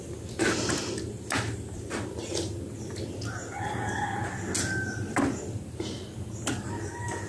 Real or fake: real